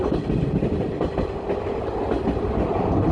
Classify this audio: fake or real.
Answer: real